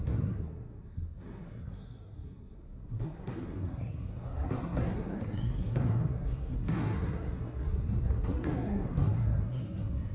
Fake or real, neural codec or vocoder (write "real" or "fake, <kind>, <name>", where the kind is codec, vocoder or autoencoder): fake, codec, SNAC